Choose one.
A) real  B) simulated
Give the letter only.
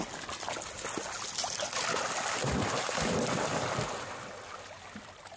A